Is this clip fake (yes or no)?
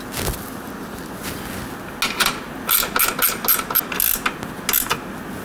no